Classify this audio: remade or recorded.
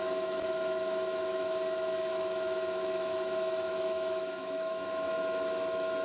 remade